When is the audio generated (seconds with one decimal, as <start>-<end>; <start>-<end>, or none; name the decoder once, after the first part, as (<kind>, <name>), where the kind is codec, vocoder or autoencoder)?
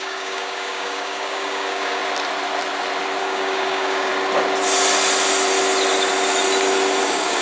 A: 0.0-2.0 (codec, DAC); 3.2-4.1; 7.0-7.4